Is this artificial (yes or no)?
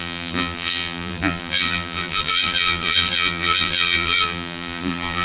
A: yes